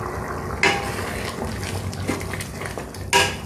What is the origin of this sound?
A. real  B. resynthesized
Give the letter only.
A